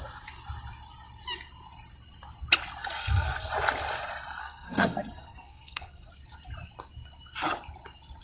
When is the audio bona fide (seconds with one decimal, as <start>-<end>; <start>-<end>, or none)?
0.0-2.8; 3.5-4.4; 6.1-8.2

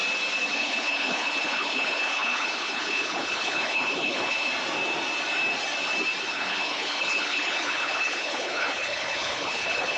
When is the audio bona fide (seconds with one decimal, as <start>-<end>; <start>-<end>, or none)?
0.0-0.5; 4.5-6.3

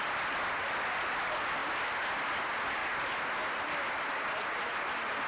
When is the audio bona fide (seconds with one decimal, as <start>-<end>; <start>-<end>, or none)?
1.6-2.1; 2.8-3.4